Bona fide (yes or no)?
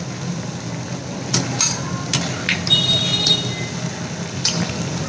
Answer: yes